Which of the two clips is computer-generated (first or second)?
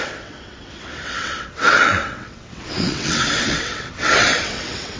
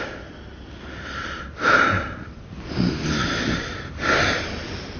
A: first